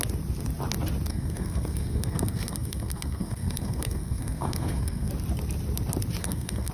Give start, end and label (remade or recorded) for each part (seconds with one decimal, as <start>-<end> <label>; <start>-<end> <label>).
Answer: 0.0-1.1 recorded; 1.1-5.1 remade; 5.1-6.2 recorded; 6.2-6.7 remade